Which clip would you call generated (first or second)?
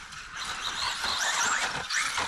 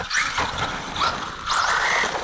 first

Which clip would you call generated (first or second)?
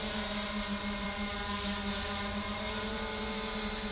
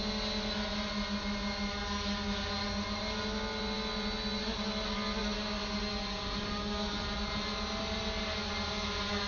first